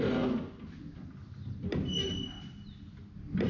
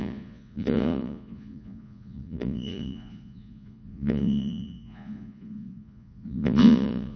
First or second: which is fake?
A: second